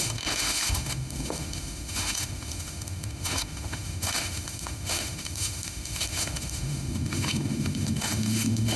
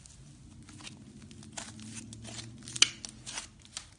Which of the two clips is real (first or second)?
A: second